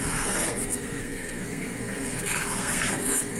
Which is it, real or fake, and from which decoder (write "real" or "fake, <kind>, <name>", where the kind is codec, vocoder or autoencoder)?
fake, codec, SNAC